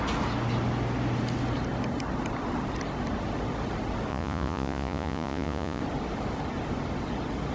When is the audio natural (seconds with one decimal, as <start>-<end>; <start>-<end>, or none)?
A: 0.0-4.1; 5.8-7.5